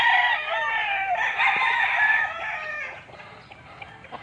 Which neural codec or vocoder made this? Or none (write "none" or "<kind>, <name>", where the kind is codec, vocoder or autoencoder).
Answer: none